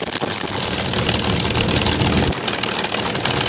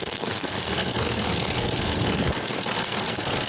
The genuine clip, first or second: first